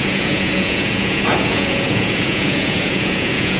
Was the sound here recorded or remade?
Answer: remade